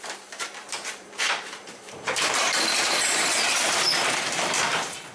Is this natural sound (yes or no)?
no